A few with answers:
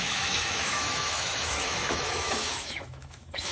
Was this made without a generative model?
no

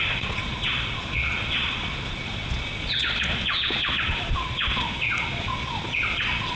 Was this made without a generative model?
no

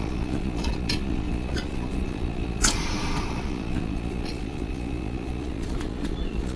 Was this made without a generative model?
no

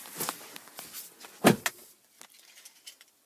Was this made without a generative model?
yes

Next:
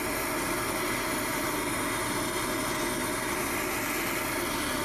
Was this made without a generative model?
yes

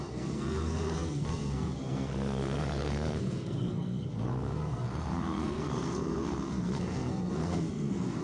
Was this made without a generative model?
no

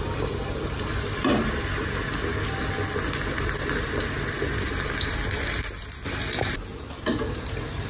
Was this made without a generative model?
yes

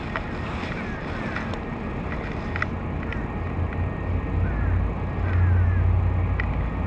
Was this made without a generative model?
yes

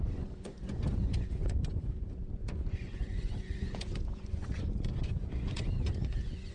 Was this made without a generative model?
no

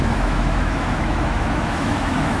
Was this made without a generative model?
no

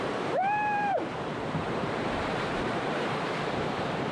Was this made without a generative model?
no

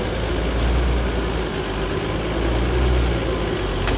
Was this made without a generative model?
yes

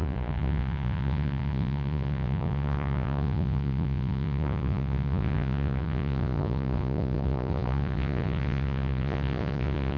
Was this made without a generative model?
no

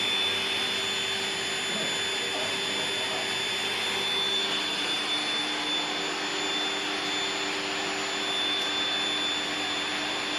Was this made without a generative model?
yes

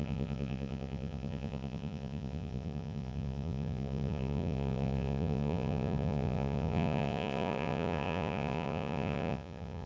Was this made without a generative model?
no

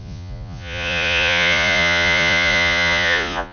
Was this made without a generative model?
no